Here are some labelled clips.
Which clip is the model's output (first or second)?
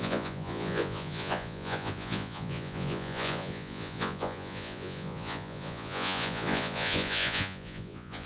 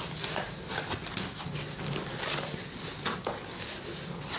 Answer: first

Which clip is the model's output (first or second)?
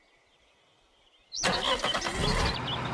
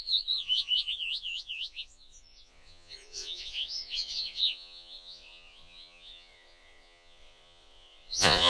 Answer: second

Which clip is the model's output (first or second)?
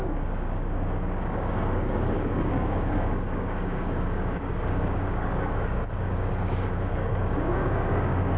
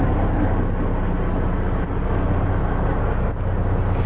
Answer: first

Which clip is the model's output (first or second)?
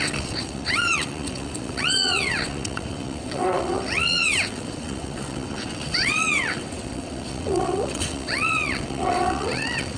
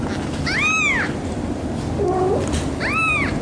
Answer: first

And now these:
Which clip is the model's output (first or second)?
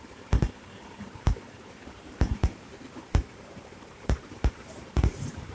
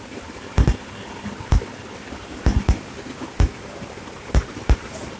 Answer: first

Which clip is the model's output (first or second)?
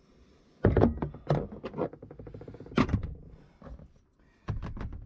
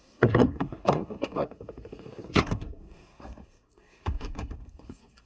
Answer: second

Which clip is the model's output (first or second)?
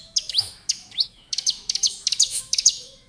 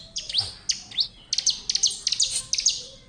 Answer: first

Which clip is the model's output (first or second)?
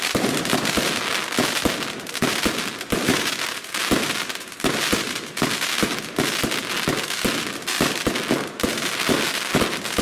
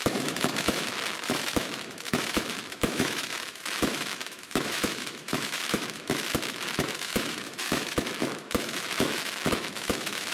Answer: second